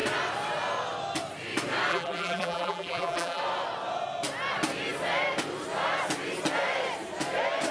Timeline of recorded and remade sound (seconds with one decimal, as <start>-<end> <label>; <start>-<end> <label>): 0.0-1.9 recorded; 1.9-3.4 remade; 3.4-7.7 recorded